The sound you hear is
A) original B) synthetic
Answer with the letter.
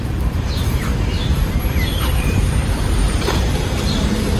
B